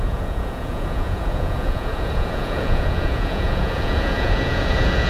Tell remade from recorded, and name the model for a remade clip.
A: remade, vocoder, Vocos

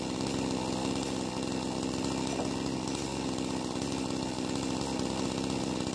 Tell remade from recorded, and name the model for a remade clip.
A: recorded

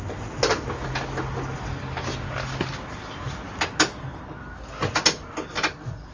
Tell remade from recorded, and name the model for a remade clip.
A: recorded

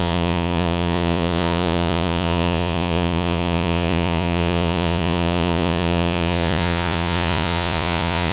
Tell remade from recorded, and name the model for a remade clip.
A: remade, vocoder, Vocos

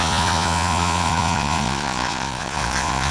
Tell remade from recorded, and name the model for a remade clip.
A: remade, vocoder, Vocos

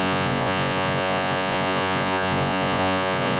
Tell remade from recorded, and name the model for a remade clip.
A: remade, vocoder, Vocos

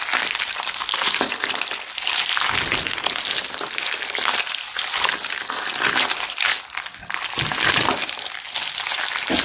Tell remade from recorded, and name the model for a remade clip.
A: recorded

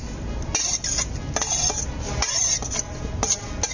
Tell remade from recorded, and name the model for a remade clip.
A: recorded